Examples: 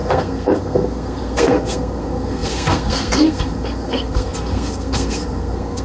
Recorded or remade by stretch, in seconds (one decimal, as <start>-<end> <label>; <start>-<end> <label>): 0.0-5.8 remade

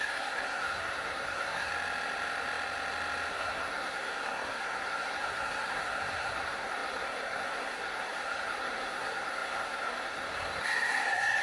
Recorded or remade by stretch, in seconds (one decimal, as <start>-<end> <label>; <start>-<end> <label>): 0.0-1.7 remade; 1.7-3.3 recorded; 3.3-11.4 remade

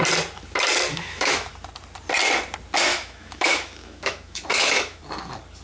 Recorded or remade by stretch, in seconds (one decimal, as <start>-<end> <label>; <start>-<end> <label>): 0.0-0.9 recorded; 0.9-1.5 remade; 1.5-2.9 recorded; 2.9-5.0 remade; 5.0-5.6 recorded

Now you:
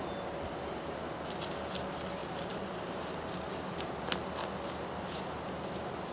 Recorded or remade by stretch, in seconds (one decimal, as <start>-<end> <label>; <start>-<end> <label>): 0.0-2.2 recorded; 2.2-4.0 remade; 4.0-6.1 recorded

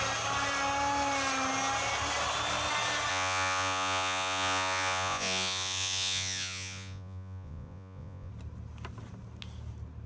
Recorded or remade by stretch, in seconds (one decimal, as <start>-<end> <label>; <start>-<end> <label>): 0.0-3.1 recorded; 3.1-8.3 remade; 8.3-10.1 recorded

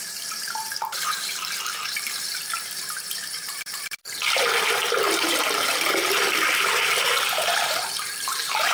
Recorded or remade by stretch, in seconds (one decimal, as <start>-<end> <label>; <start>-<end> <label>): 0.0-4.0 remade; 4.0-4.6 recorded; 4.6-8.7 remade